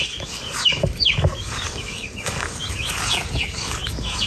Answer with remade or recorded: remade